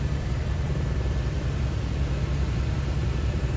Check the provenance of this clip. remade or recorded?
remade